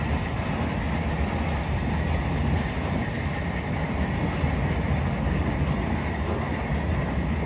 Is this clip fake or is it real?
real